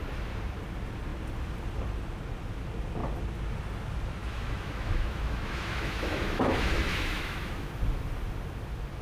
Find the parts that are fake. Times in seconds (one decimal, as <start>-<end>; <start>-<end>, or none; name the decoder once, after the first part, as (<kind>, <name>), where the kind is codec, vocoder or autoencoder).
4.2-7.7 (autoencoder, DAC-VAE)